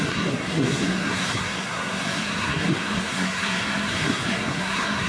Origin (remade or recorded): remade